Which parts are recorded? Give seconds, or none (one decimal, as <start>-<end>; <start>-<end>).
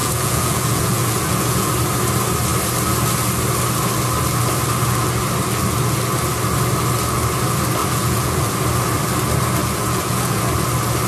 1.7-7.8; 8.5-9.6; 10.4-11.1